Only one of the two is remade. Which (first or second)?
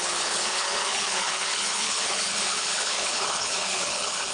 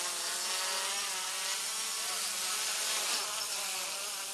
first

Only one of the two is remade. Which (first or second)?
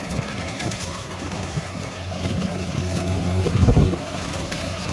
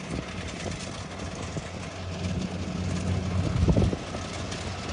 first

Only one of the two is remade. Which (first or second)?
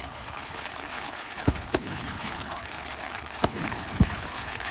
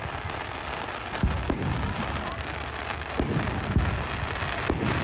first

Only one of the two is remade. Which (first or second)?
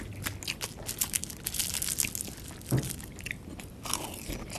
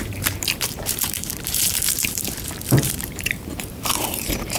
second